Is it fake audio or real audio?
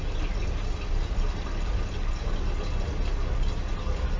real